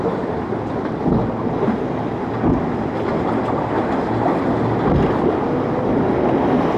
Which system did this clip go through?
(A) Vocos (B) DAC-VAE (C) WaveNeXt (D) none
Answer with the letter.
D